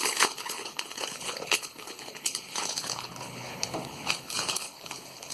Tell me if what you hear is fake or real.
fake